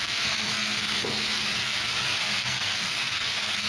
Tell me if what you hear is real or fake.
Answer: fake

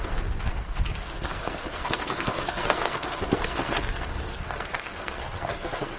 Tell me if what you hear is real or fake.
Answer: fake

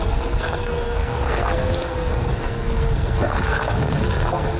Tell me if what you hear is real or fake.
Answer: fake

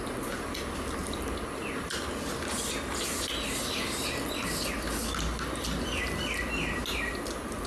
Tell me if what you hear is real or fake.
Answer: real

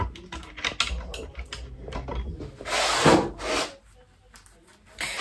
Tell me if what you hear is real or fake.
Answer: real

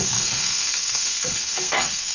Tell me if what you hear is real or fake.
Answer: fake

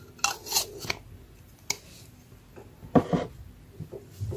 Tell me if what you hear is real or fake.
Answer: real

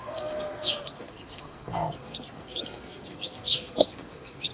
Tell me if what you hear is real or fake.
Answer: fake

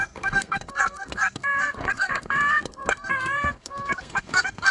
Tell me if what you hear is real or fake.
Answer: fake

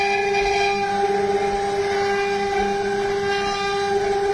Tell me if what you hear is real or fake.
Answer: real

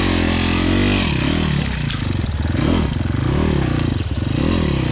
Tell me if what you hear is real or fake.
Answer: real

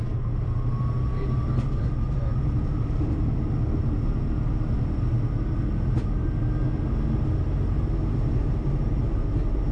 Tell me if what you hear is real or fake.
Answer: real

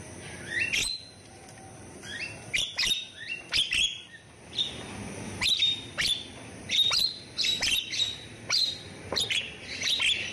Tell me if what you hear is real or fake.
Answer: real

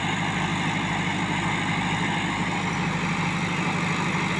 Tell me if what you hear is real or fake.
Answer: real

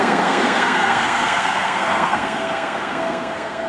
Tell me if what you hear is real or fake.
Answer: fake